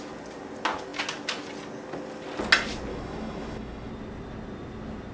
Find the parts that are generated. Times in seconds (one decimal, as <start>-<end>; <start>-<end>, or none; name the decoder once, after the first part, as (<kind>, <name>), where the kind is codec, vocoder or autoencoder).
2.9-3.9 (autoencoder, DAC-VAE)